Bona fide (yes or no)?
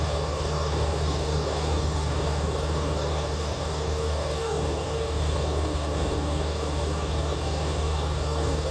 no